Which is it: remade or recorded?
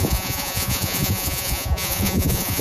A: remade